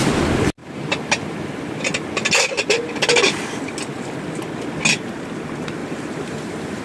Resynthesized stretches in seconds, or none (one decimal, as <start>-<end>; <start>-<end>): 5.8-6.8